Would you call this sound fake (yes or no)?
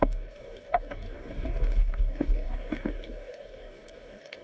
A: yes